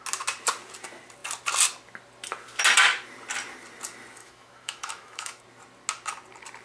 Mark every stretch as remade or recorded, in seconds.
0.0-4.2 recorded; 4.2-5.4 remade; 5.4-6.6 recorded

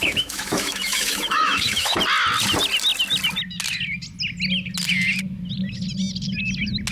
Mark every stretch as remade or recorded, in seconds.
0.0-2.0 remade; 2.0-6.9 recorded

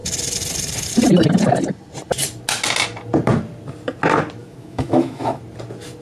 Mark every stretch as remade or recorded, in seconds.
0.0-4.4 recorded; 4.4-5.4 remade; 5.4-6.0 recorded

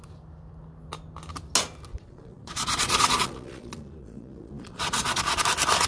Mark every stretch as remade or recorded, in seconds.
0.0-1.9 recorded; 1.9-5.4 remade; 5.4-5.9 recorded

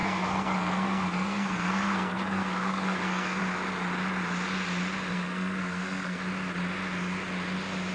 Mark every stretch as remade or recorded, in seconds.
0.0-3.4 remade; 3.4-5.1 recorded; 5.1-6.2 remade; 6.2-7.9 recorded

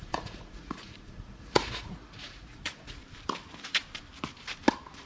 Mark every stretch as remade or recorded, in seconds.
0.0-3.0 remade; 3.0-5.1 recorded